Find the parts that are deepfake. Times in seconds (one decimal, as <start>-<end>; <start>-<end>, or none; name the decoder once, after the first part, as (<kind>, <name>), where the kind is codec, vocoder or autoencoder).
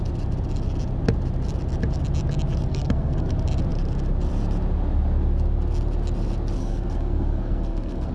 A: 2.7-3.3 (codec, SNAC); 6.6-8.1